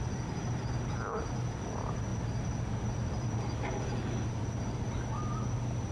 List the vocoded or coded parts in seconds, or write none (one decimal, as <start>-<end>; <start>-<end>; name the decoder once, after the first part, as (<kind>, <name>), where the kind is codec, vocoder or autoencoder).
none